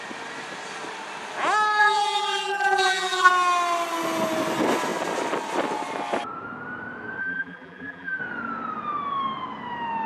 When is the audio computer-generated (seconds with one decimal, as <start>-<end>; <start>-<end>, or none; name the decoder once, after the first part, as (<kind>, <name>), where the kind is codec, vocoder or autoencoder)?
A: 1.8-3.3 (vocoder, BigVGAN v2); 7.2-8.2